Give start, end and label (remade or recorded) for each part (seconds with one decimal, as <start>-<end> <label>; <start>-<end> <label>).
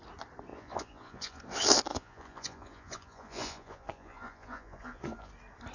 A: 0.0-0.5 recorded; 0.5-1.4 remade; 1.4-1.9 recorded; 1.9-5.3 remade; 5.3-5.7 recorded